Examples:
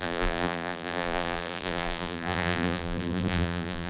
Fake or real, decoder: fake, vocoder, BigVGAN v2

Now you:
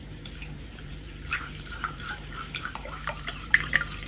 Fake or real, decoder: fake, vocoder, BigVGAN v2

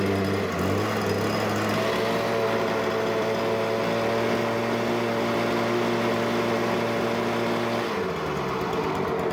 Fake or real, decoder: real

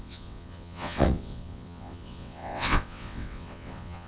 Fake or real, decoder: fake, vocoder, WaveNeXt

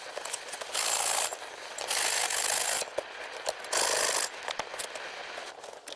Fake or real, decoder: real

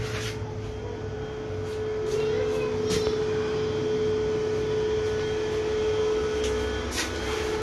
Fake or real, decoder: real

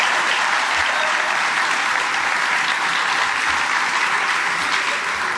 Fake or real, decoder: real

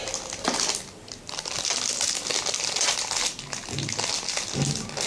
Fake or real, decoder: real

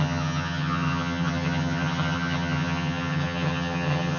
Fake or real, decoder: fake, vocoder, HiFi-GAN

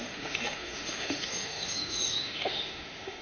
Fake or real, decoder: fake, autoencoder, DAC-VAE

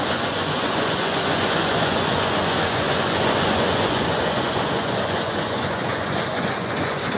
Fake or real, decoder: fake, vocoder, Vocos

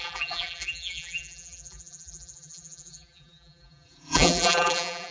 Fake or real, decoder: fake, vocoder, BigVGAN v2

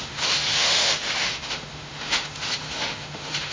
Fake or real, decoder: fake, autoencoder, DAC-VAE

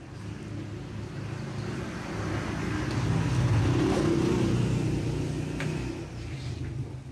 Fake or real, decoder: real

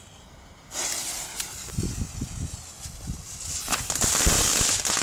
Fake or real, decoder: real